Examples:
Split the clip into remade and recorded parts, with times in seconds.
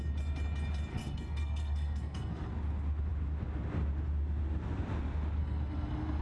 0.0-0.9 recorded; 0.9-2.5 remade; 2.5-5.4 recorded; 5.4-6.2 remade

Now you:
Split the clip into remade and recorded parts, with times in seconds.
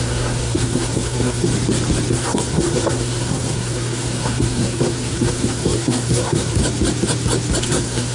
0.0-1.5 remade; 1.5-2.1 recorded; 2.1-6.6 remade; 6.6-7.6 recorded; 7.6-8.1 remade